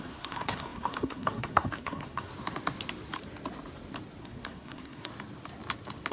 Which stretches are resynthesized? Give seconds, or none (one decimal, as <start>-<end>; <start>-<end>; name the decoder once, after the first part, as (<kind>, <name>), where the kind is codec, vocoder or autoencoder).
0.0-2.3 (codec, SNAC); 4.2-5.1